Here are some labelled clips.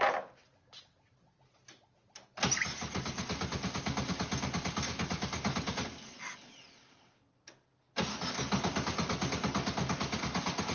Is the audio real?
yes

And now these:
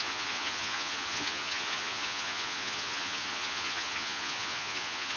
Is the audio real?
no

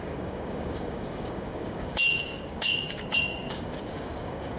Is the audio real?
no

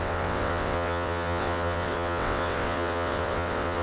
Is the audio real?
no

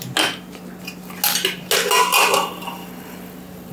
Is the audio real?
yes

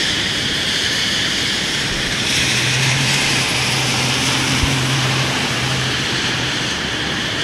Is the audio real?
no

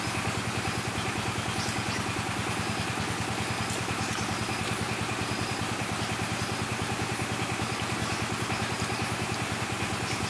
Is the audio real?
yes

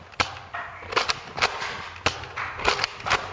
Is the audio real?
yes